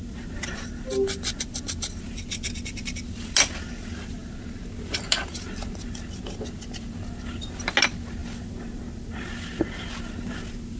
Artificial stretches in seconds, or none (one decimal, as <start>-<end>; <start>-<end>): none